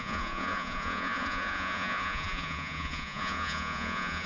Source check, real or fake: fake